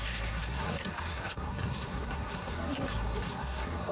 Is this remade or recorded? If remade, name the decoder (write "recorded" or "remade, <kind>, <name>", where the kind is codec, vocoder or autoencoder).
remade, codec, SNAC